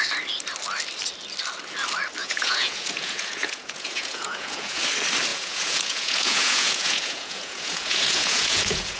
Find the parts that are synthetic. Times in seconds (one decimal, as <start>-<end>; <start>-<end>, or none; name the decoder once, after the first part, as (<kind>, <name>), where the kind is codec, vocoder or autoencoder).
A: 2.2-4.8 (vocoder, Vocos); 5.3-9.0